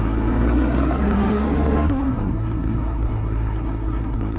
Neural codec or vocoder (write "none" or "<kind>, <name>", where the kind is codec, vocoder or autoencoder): codec, SNAC